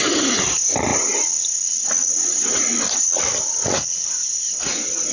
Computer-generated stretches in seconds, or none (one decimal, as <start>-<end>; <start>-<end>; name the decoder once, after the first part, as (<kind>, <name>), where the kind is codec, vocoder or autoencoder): none